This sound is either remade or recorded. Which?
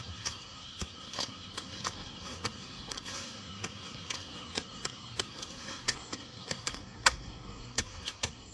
remade